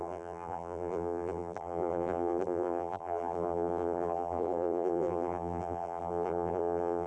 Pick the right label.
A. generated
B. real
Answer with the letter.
A